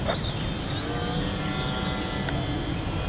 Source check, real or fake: real